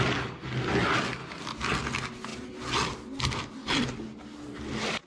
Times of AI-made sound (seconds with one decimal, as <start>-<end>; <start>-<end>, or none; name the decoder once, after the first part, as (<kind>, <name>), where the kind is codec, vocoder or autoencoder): 1.2-1.7 (vocoder, BigVGAN v2)